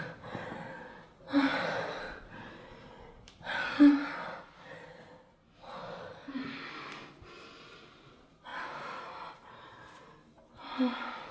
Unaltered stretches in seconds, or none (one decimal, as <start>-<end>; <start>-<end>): 0.0-1.5; 2.5-8.5; 9.9-11.3